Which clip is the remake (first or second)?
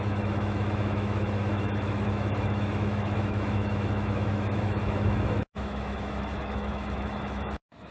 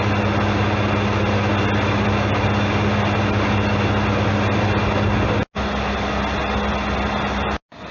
first